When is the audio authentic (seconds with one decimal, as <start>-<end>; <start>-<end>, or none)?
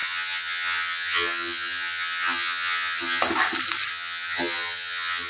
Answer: 3.2-3.9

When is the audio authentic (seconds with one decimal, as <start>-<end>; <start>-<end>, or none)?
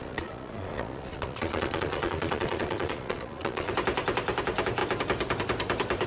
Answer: 3.7-6.1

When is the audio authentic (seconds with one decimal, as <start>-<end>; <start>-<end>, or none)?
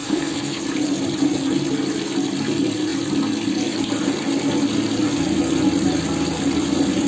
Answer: 0.6-7.1